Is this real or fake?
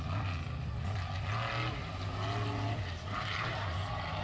real